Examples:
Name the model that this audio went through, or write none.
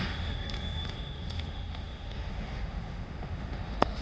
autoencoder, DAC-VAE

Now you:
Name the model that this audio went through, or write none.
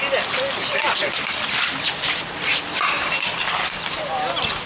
none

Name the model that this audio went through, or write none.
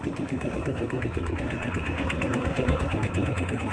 codec, SNAC